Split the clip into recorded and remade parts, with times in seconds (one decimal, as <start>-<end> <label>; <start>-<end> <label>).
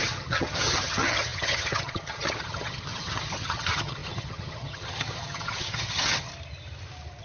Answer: 0.0-6.3 remade; 6.3-7.2 recorded